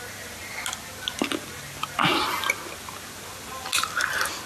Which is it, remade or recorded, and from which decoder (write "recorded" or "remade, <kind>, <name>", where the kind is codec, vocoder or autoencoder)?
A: recorded